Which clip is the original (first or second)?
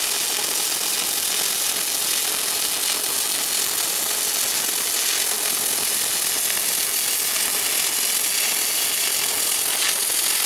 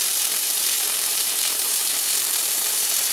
first